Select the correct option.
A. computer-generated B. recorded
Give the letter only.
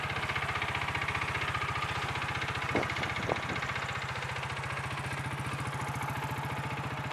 B